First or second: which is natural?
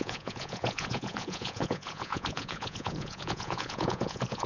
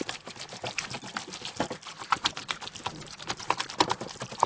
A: second